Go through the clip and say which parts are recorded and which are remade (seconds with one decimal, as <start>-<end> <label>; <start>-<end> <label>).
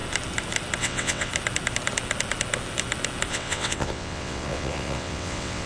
0.0-0.8 recorded; 0.8-1.3 remade; 1.3-3.3 recorded; 3.3-5.7 remade